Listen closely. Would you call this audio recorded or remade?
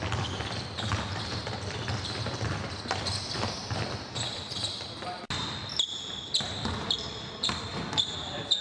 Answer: recorded